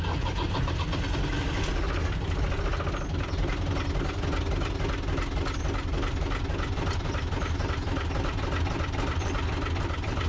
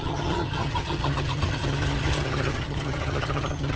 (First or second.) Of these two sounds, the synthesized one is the second